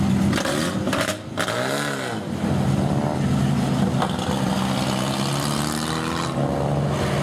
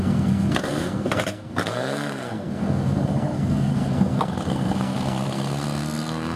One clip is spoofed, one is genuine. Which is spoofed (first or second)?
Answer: second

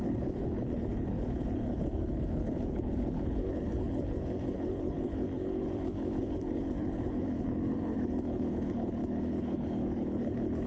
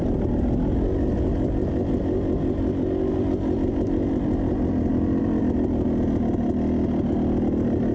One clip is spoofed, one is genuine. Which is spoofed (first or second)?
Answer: first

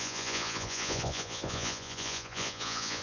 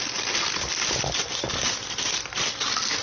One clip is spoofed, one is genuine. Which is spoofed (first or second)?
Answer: first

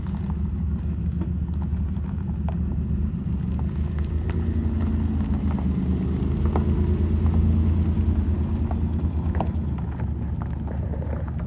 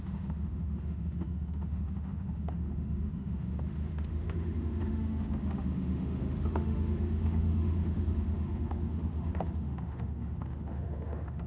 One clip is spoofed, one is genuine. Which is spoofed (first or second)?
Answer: second